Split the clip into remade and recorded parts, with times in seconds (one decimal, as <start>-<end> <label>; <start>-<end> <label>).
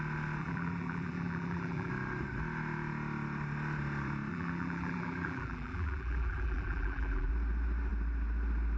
0.0-0.4 recorded; 0.4-1.9 remade; 1.9-4.3 recorded; 4.3-7.3 remade; 7.3-8.8 recorded